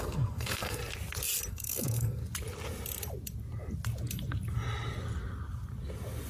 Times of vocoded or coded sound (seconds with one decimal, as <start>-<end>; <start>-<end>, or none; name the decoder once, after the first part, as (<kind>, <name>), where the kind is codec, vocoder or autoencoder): 0.0-0.8 (codec, SNAC); 1.5-2.2